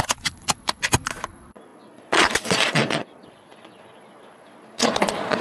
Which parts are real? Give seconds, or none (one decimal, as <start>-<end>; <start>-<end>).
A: none